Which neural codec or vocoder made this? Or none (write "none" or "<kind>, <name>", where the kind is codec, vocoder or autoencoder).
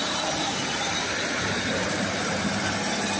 none